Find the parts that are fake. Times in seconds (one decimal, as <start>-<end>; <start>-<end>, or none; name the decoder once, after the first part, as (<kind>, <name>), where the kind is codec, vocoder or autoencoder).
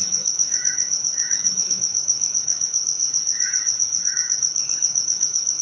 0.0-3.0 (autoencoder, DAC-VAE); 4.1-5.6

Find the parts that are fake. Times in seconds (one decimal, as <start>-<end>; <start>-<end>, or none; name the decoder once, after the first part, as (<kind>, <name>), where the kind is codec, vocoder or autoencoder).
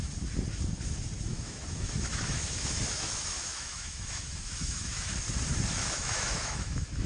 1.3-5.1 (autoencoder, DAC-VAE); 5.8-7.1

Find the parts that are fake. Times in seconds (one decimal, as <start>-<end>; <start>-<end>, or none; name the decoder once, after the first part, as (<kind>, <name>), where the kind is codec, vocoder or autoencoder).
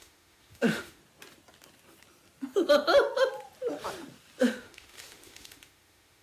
0.0-1.0 (autoencoder, DAC-VAE); 4.4-6.2